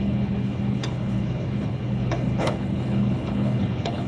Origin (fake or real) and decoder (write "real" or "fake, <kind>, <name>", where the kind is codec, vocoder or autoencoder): fake, codec, HILCodec